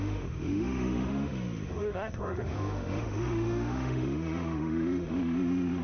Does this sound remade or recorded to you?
remade